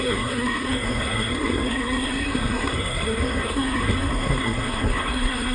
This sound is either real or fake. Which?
fake